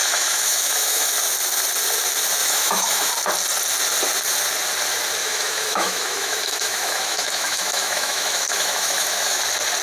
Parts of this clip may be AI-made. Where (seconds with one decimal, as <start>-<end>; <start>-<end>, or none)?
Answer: 0.0-1.1; 2.4-3.1; 5.2-9.4